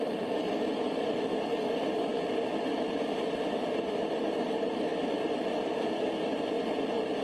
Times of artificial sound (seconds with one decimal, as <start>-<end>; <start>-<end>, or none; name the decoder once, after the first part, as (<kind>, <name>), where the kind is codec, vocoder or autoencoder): none